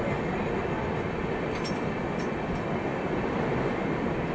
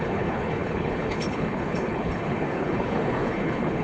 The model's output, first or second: second